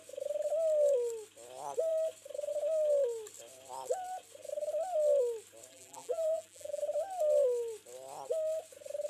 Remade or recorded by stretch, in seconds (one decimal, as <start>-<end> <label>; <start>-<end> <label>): 0.0-5.7 recorded; 5.7-6.8 remade; 6.8-9.1 recorded